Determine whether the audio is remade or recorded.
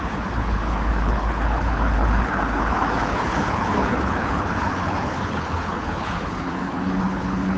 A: remade